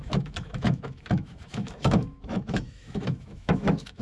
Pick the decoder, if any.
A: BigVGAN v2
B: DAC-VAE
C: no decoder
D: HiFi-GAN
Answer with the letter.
B